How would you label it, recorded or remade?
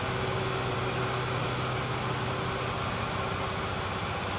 recorded